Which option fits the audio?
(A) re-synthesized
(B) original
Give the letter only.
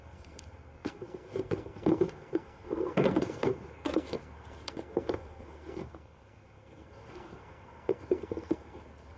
A